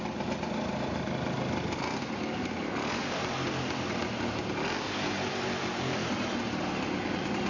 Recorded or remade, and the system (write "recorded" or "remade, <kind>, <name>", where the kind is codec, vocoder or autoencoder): recorded